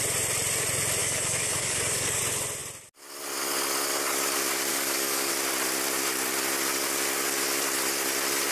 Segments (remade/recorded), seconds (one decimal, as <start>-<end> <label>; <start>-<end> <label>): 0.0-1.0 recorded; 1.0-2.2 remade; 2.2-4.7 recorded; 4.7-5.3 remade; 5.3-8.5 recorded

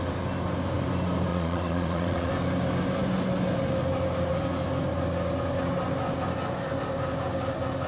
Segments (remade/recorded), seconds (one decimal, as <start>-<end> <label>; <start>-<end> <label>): 0.0-1.3 recorded; 1.3-2.3 remade; 2.3-7.9 recorded

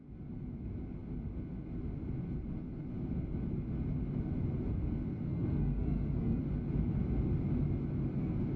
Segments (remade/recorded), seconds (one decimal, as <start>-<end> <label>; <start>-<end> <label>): 0.0-5.2 recorded; 5.2-6.4 remade; 6.4-8.6 recorded

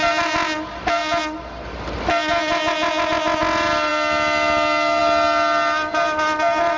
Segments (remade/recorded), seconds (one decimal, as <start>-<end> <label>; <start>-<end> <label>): 0.0-6.8 recorded